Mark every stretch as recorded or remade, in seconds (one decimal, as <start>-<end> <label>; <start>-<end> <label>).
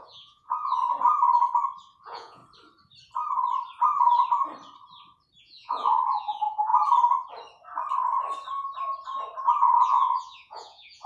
0.0-0.8 remade; 0.8-2.0 recorded; 2.0-2.4 remade; 2.4-5.4 recorded; 5.4-6.7 remade; 6.7-9.6 recorded; 9.6-11.1 remade